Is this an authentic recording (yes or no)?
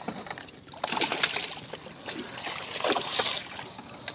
yes